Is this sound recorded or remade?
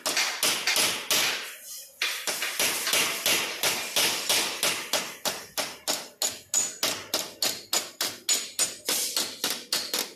recorded